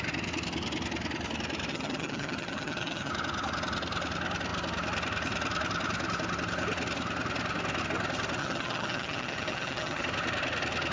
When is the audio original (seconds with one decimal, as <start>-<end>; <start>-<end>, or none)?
0.0-1.7; 3.1-8.4; 10.0-10.9